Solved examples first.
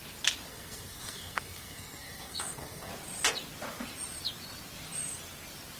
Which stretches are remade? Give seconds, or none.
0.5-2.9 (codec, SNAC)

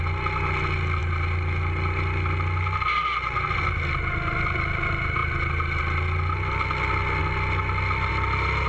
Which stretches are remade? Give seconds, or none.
none

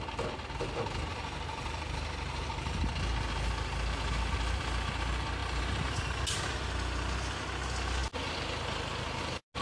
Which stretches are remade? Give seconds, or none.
1.1-2.9 (vocoder, BigVGAN v2); 5.4-6.2

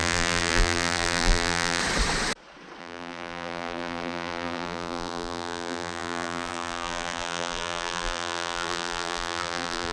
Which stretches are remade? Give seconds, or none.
0.0-1.8 (vocoder, BigVGAN v2); 2.8-9.9